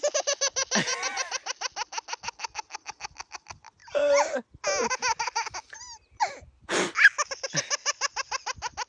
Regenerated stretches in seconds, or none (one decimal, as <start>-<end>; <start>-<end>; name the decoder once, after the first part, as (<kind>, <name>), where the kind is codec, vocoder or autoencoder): none